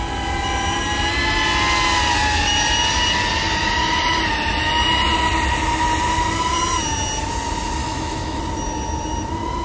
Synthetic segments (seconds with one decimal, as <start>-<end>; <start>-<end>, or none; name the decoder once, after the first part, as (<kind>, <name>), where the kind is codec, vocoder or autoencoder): 7.8-8.4 (autoencoder, DAC-VAE)